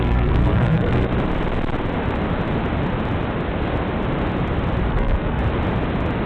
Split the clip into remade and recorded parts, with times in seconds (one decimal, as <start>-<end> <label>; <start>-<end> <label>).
0.0-1.1 remade; 1.1-4.9 recorded; 4.9-5.4 remade; 5.4-6.3 recorded